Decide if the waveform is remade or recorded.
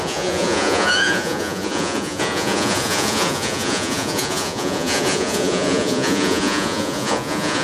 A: remade